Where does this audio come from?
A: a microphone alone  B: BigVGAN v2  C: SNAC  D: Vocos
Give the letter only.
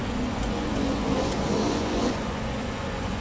D